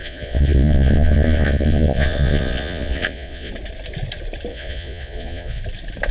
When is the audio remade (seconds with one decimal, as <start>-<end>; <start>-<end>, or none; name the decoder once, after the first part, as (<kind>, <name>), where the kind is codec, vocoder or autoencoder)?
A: 0.0-3.5 (vocoder, Vocos); 4.5-5.6